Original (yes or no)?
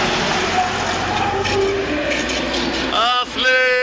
yes